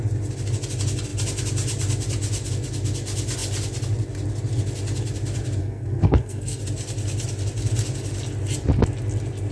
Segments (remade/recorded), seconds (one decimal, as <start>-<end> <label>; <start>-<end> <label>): 0.0-5.6 recorded; 5.6-6.6 remade; 6.6-9.5 recorded